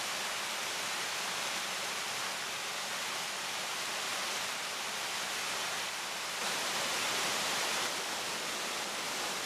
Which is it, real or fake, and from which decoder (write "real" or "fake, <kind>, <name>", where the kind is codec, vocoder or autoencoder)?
real